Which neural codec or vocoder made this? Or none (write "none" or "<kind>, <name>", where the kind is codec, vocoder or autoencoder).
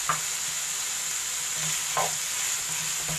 none